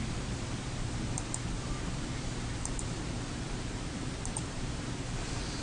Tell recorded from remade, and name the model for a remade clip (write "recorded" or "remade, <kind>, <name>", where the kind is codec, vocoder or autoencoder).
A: remade, vocoder, BigVGAN v2